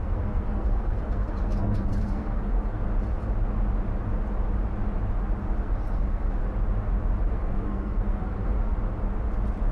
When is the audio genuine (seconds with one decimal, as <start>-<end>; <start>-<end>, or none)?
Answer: 2.8-5.6; 6.4-7.3; 8.7-9.7